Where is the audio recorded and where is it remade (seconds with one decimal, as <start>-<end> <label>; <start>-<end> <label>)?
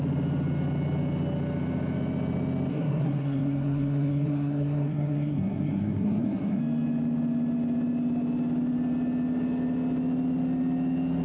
0.0-2.7 recorded; 2.7-6.6 remade; 6.6-11.2 recorded